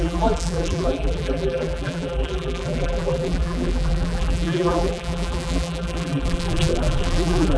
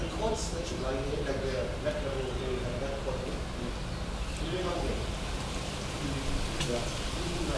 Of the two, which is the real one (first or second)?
second